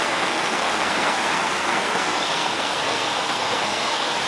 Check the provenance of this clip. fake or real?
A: fake